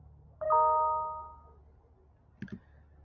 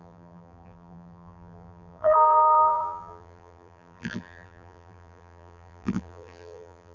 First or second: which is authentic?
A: first